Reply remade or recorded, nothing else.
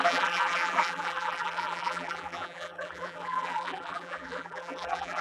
remade